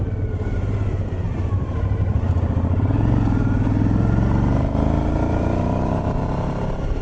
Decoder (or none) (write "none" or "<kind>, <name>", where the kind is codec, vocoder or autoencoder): none